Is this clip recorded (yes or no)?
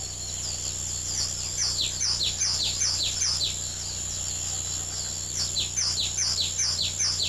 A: yes